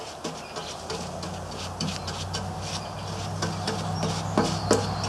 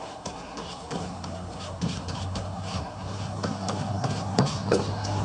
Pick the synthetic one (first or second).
second